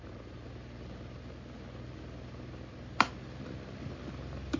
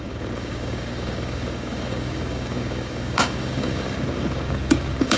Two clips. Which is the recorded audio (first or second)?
first